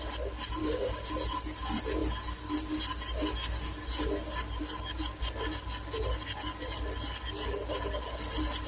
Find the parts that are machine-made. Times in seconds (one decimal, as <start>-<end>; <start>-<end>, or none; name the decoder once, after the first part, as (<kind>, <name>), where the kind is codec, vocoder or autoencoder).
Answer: 0.6-1.1 (codec, DAC)